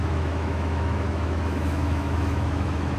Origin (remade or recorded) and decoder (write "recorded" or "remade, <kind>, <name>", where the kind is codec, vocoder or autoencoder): remade, autoencoder, DAC-VAE